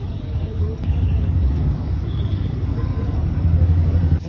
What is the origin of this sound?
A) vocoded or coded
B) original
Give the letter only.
A